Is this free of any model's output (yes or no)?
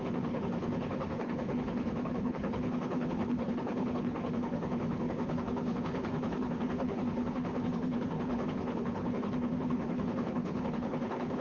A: no